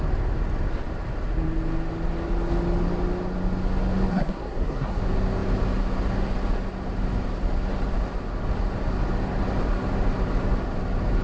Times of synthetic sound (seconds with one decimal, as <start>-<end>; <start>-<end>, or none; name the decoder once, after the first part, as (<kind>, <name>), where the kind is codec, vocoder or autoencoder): 4.1-5.0 (codec, SNAC)